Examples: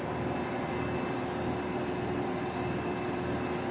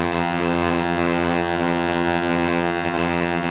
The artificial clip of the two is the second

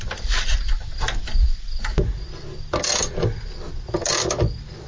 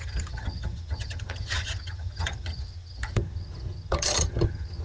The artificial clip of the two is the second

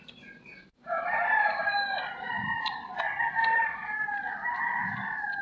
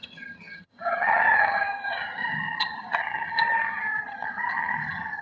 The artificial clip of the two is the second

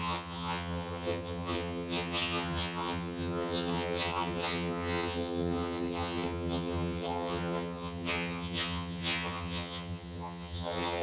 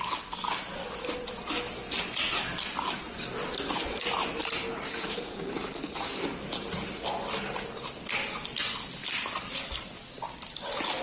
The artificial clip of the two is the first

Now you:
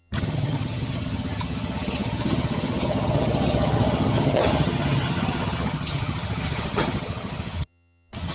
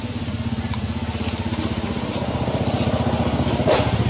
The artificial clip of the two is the first